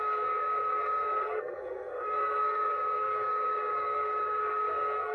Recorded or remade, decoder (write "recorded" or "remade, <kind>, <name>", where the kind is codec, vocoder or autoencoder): remade, codec, SNAC